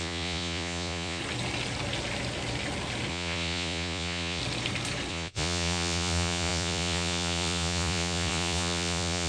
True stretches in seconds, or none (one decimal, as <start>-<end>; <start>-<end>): 1.2-3.1; 4.4-5.1